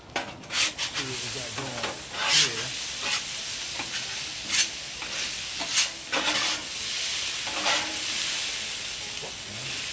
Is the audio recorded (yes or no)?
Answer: yes